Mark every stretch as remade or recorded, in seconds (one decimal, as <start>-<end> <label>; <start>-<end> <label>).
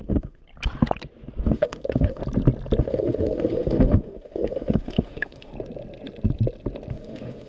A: 0.0-0.4 remade; 0.4-1.4 recorded; 1.4-2.2 remade; 2.2-2.8 recorded; 2.8-5.5 remade; 5.5-6.9 recorded; 6.9-7.5 remade